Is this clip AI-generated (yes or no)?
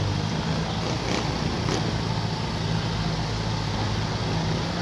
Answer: no